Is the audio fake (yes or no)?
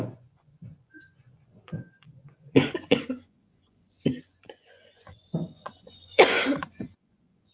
yes